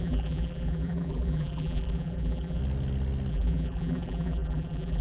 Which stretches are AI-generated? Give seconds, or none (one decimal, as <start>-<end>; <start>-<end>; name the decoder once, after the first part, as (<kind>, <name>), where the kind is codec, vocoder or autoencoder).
0.0-2.6 (vocoder, BigVGAN v2); 3.3-5.0